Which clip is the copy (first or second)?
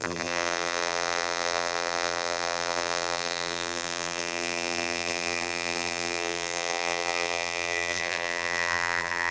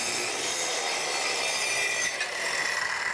first